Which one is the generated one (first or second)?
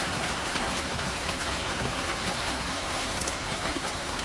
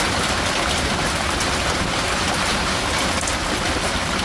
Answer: first